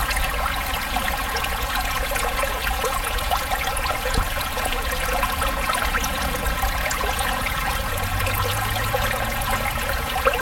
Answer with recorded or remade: remade